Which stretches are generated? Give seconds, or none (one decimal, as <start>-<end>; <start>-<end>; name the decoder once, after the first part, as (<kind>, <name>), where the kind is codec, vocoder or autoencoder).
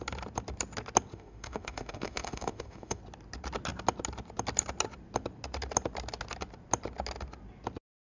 1.1-3.0 (autoencoder, DAC-VAE)